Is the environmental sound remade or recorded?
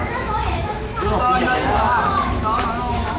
remade